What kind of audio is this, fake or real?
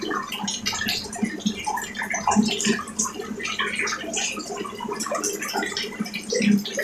real